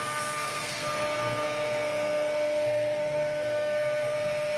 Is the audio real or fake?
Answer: fake